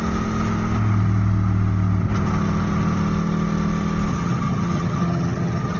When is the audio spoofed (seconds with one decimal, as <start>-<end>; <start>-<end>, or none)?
4.1-5.8